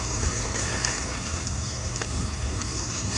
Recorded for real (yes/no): no